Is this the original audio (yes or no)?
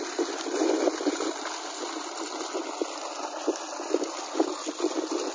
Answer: yes